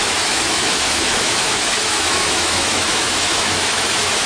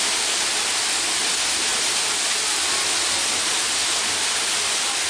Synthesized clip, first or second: first